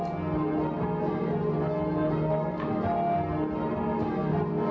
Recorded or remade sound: recorded